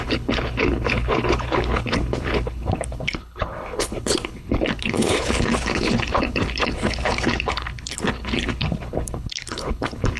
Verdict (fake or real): fake